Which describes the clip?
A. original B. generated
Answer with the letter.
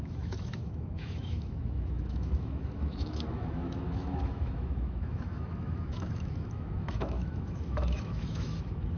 B